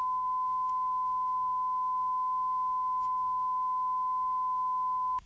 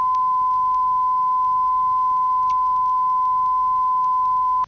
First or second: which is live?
second